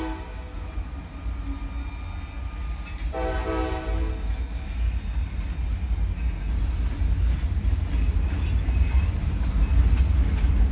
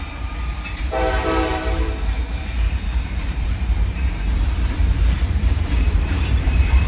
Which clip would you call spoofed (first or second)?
second